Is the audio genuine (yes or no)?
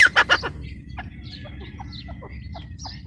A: yes